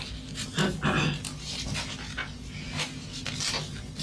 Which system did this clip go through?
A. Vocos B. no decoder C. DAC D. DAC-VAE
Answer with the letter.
B